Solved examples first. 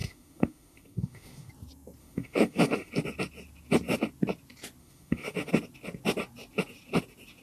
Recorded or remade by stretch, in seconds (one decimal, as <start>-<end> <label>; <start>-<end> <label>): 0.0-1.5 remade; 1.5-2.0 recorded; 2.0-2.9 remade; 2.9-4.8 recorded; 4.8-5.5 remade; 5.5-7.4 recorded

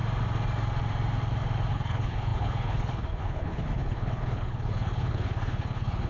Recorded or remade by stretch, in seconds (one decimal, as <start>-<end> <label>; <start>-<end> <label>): 0.0-1.7 recorded; 1.7-6.1 remade

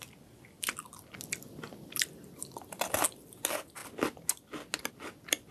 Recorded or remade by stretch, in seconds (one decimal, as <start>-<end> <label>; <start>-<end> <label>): 0.0-5.5 recorded

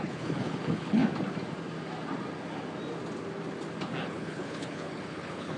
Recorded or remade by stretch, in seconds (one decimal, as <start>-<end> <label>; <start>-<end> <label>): 0.0-1.0 remade; 1.0-4.0 recorded; 4.0-5.6 remade

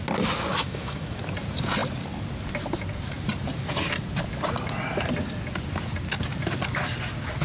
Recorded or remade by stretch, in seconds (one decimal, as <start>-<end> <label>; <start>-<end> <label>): 0.0-0.5 recorded; 0.5-1.2 remade; 1.2-7.4 recorded

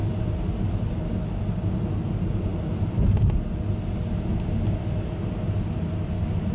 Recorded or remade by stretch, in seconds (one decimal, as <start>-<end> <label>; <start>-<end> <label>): 0.0-6.5 recorded

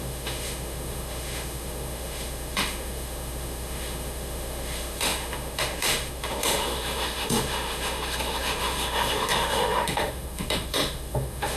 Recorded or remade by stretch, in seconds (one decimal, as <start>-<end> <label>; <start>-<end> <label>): 0.0-11.6 remade

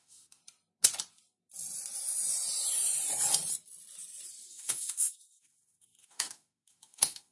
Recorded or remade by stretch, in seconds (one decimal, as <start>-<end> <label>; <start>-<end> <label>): 0.0-0.4 remade; 0.4-4.5 recorded; 4.5-7.3 remade